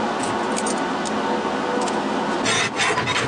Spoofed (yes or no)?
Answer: no